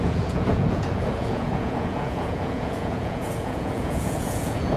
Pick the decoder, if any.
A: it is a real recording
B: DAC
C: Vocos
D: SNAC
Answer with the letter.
C